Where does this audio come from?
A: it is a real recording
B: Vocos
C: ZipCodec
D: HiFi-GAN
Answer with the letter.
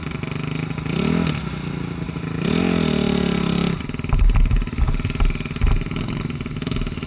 A